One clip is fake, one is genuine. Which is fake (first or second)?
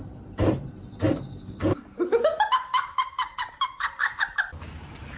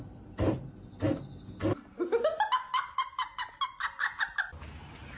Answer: first